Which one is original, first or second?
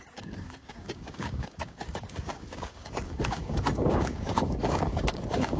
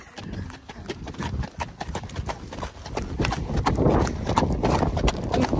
second